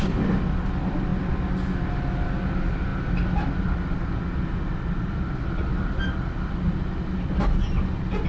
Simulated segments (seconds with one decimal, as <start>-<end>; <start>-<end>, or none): none